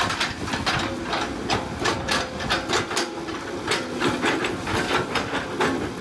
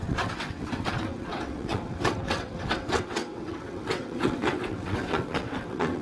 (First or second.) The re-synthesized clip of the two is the second